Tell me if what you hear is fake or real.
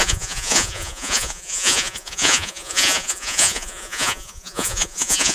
fake